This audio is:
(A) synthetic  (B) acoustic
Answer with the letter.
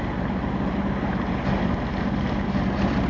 B